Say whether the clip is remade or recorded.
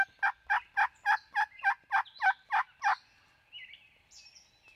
recorded